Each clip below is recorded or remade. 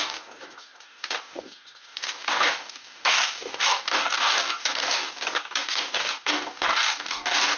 remade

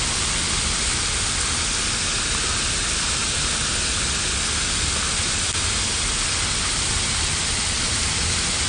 recorded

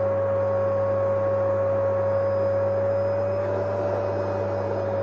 recorded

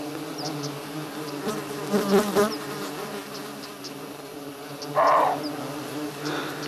recorded